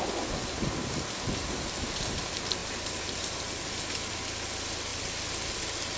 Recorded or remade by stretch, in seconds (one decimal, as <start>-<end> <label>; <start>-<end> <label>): 0.0-2.6 recorded; 2.6-3.6 remade; 3.6-6.0 recorded